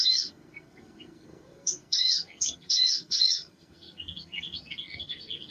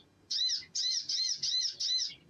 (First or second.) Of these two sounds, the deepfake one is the first